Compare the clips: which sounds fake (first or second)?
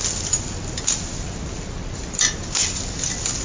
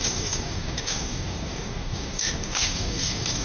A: second